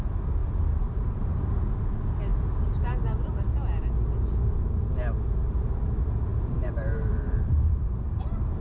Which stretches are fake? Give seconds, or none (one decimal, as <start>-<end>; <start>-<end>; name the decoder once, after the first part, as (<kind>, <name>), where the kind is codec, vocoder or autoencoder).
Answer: 0.4-1.6 (vocoder, BigVGAN v2); 2.3-3.3; 6.3-8.2